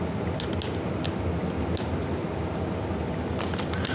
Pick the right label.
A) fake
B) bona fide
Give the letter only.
B